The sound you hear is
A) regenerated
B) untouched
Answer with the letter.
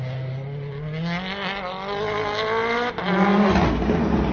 B